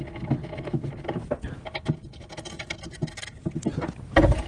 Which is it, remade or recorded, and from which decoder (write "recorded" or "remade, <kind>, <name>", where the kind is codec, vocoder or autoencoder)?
recorded